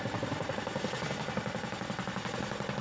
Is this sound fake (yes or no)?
no